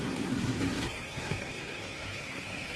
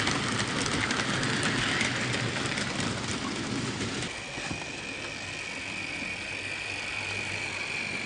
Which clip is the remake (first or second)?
first